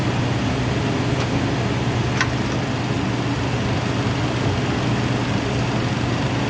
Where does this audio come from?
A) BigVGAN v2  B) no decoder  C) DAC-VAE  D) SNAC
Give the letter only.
B